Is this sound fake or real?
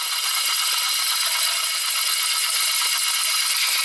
real